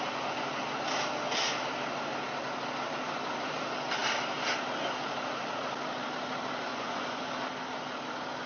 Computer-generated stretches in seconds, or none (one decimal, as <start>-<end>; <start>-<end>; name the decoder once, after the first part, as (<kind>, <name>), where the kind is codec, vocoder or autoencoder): 6.7-7.3 (vocoder, Vocos)